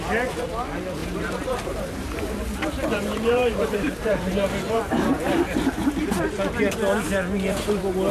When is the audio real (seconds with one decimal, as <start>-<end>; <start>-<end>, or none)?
0.0-1.0; 5.9-8.1